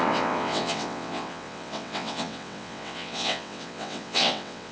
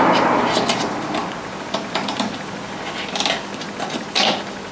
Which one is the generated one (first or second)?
first